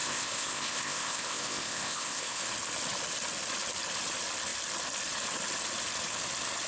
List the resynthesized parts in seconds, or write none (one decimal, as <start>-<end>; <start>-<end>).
0.0-2.4